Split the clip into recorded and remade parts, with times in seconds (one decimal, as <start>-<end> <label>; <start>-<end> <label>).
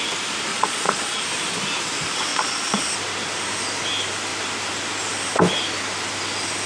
0.0-0.5 recorded; 0.5-1.2 remade; 1.2-2.3 recorded; 2.3-2.8 remade; 2.8-6.7 recorded